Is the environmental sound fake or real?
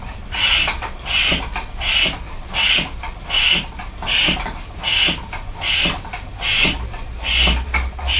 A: real